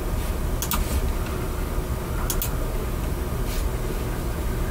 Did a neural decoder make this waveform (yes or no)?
no